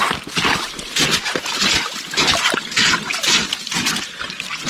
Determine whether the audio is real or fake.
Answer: real